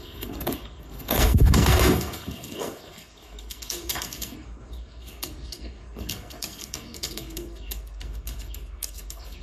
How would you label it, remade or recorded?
remade